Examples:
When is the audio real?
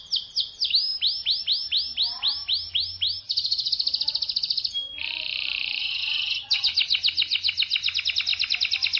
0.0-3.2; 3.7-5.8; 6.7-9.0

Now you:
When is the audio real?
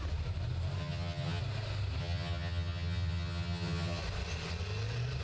0.0-0.8; 1.4-2.0; 4.0-5.2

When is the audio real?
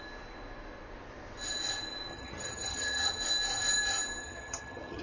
0.0-2.1; 3.1-4.2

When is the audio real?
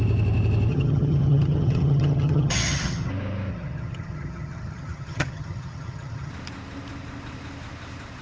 0.0-0.7; 3.1-3.5; 6.3-8.2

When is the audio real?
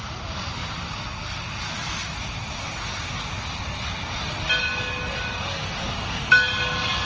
0.0-7.1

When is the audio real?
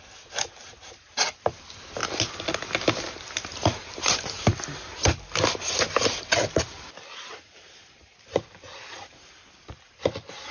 0.0-10.5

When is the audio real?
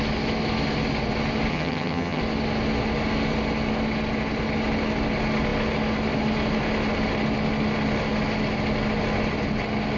0.0-1.5; 2.2-10.0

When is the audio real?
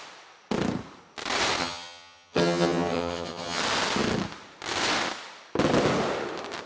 0.0-1.6; 3.6-6.7